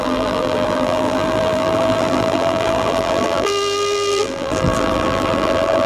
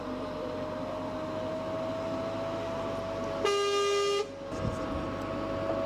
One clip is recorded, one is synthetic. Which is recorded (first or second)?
second